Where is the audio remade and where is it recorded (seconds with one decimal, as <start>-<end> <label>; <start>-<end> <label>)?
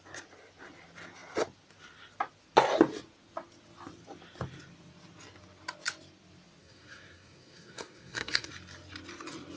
0.0-6.6 recorded; 6.6-8.5 remade; 8.5-9.6 recorded